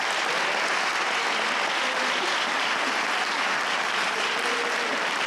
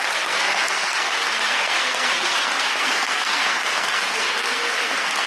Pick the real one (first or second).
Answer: first